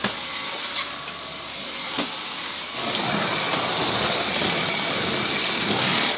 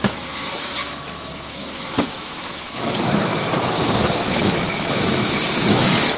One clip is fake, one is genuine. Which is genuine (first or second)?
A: first